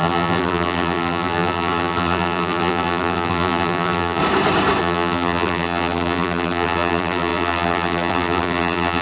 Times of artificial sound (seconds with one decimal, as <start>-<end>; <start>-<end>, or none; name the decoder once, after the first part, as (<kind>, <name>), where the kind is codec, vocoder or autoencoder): 0.0-4.2 (vocoder, BigVGAN v2); 4.8-9.0